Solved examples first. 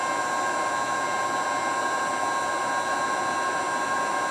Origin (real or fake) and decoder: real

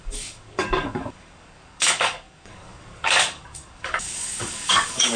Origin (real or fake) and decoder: fake, codec, DAC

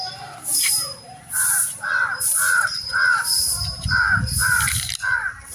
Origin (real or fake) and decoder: fake, vocoder, BigVGAN v2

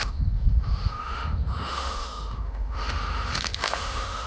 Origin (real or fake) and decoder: fake, autoencoder, DAC-VAE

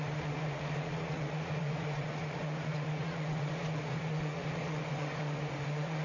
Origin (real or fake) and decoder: fake, vocoder, Vocos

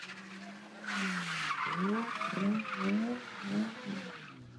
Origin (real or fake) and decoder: real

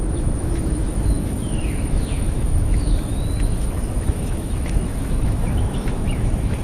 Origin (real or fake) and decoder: fake, autoencoder, DAC-VAE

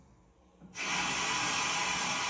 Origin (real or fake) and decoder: real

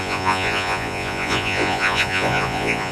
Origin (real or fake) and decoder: fake, vocoder, Vocos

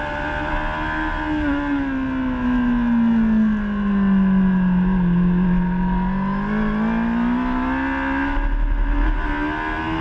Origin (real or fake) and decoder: real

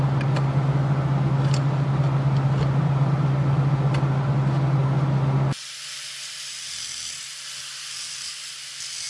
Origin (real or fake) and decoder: real